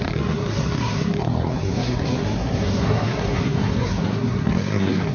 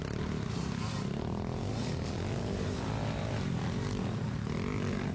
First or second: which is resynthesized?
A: first